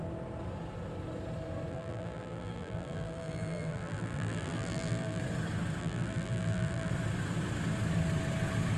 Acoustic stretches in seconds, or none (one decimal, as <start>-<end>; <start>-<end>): 0.0-1.7; 5.2-5.8; 6.9-8.8